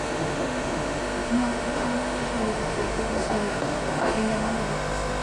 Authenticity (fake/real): fake